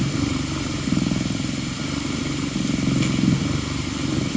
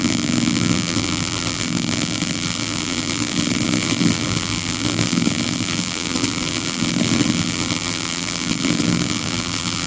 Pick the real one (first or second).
first